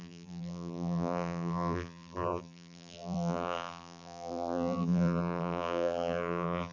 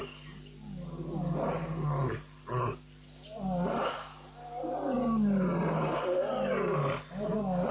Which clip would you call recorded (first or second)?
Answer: second